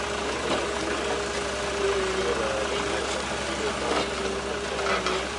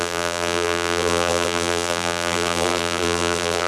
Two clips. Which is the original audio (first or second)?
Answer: first